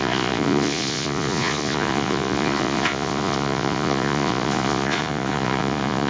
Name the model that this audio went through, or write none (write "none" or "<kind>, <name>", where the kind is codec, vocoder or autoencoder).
vocoder, Vocos